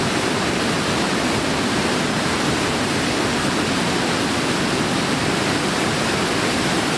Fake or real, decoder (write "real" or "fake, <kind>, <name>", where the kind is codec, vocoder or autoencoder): real